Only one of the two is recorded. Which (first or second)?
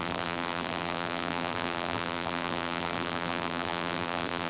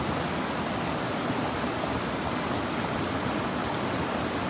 second